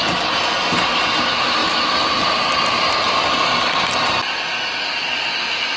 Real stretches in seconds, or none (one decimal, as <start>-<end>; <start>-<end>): 0.0-5.8